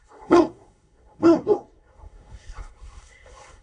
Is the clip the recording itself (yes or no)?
no